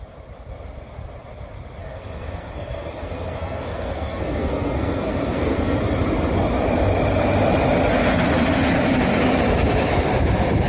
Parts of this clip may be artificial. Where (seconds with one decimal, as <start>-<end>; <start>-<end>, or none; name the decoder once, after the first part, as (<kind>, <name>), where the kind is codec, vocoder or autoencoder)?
1.8-5.8 (codec, SNAC)

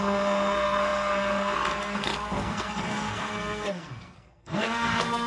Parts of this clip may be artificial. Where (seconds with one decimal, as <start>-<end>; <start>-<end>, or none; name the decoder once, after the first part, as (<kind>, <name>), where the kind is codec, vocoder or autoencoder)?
0.0-5.3 (codec, SNAC)